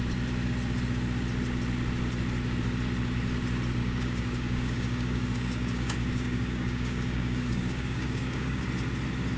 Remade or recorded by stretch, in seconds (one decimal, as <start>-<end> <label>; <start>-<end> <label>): 0.0-3.8 recorded; 3.8-8.6 remade; 8.6-9.4 recorded